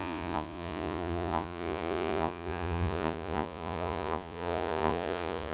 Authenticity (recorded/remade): remade